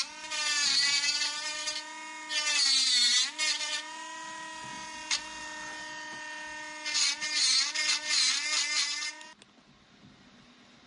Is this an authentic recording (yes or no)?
yes